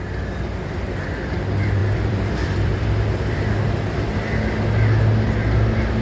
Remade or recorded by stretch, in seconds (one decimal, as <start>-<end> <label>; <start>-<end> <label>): 0.0-1.8 recorded; 1.8-2.8 remade; 2.8-6.0 recorded